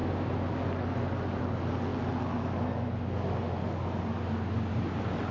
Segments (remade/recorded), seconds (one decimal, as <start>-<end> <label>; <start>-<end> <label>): 0.0-5.3 recorded